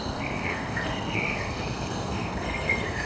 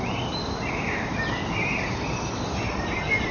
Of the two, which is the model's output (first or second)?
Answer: first